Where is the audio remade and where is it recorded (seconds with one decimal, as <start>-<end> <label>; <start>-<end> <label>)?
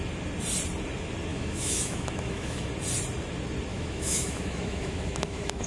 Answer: 0.0-1.3 recorded; 1.3-2.7 remade; 2.7-3.7 recorded; 3.7-5.7 remade